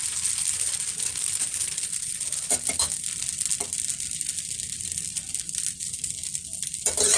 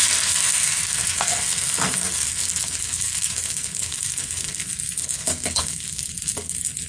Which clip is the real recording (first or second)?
first